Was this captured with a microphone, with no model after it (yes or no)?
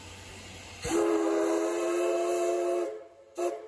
yes